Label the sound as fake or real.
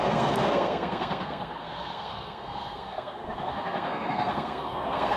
fake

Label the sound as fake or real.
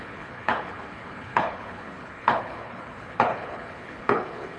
fake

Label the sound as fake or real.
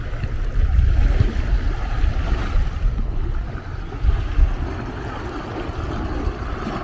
real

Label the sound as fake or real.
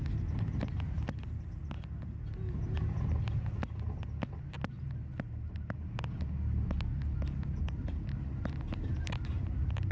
real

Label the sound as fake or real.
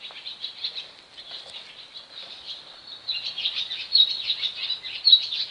real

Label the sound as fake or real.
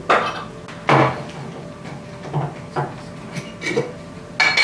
real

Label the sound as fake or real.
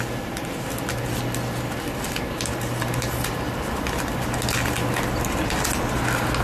real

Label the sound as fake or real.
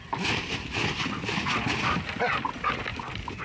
real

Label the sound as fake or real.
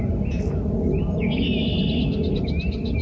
real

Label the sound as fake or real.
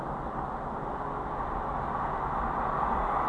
real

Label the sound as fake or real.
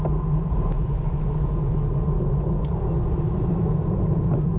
real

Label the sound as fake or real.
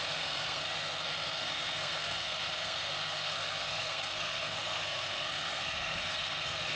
fake